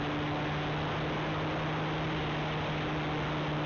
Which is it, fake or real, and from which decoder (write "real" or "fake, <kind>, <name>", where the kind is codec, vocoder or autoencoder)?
real